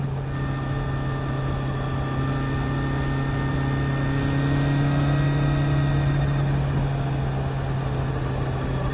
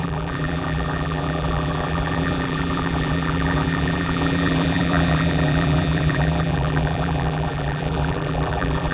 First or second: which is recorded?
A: first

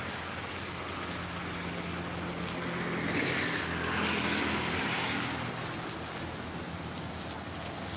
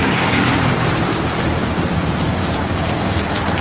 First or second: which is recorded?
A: first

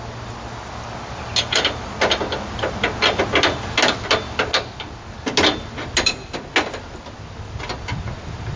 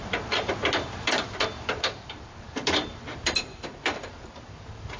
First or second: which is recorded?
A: first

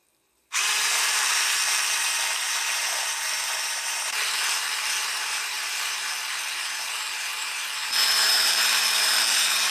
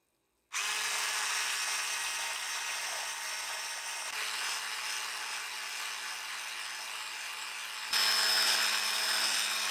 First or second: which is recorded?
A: second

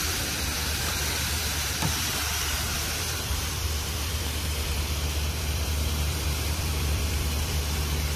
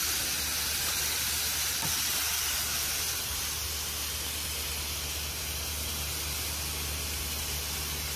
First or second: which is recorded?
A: second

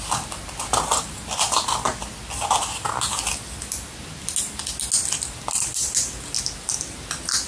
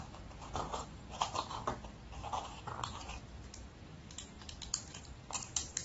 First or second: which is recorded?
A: first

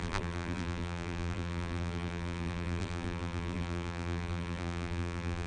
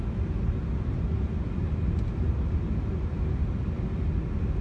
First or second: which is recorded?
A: second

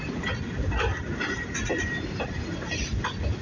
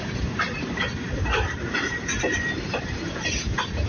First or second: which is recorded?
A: first